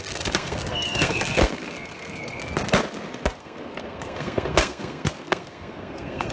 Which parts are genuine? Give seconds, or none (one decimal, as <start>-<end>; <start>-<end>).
2.4-3.4